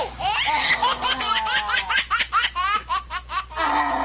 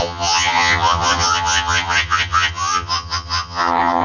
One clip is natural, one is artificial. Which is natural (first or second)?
first